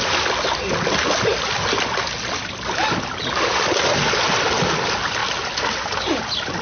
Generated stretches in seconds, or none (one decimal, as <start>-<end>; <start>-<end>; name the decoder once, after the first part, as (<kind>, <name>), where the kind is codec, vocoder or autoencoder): none